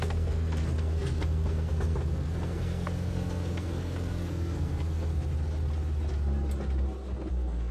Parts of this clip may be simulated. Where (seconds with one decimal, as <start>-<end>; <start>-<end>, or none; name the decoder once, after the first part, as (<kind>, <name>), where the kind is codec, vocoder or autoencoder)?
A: 0.0-5.3 (codec, SNAC); 7.3-7.7